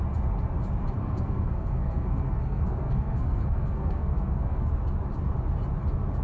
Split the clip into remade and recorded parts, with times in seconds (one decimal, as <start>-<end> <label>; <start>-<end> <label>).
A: 0.0-1.0 recorded; 1.0-4.7 remade; 4.7-6.2 recorded